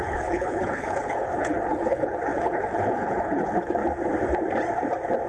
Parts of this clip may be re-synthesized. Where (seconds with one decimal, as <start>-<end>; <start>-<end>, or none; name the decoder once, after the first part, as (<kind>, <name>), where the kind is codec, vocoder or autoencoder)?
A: 0.0-3.8 (codec, HILCodec)